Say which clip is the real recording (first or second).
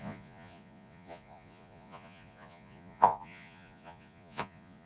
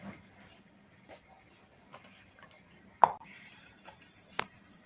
second